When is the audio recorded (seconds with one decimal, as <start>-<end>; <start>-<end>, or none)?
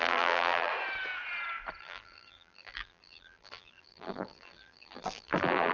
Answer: 0.7-1.8